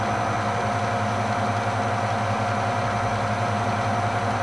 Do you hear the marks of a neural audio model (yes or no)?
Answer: no